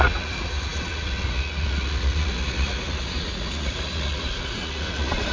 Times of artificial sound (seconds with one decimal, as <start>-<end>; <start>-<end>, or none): 0.0-5.3